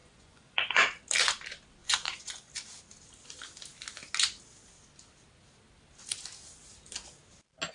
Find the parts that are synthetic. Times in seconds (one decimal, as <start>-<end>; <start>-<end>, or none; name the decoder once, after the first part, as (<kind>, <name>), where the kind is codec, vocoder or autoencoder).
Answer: 0.0-0.8 (vocoder, Vocos); 1.8-2.5